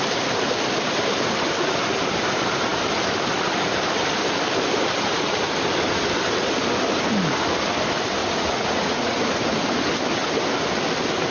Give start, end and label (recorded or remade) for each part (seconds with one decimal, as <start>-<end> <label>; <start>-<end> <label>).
0.0-8.2 recorded; 8.2-9.2 remade; 9.2-11.3 recorded